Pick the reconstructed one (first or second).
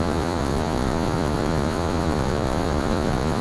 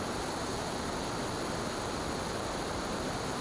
first